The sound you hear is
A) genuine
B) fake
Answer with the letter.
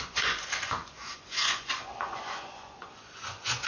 B